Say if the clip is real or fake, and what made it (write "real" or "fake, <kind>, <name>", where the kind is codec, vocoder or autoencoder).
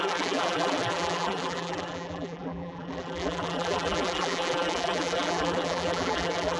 fake, vocoder, BigVGAN v2